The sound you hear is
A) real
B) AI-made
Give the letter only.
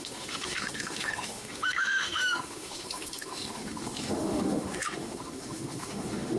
B